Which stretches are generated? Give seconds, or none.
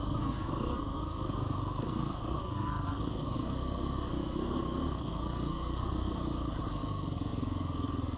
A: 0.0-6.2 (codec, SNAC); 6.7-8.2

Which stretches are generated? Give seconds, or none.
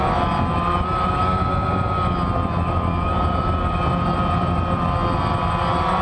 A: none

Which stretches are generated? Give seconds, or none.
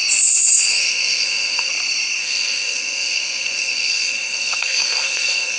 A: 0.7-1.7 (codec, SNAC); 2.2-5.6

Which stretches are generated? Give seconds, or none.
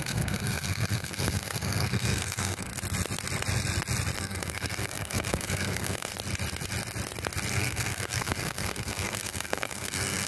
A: 0.0-2.7 (codec, SNAC); 4.2-6.1; 7.5-10.3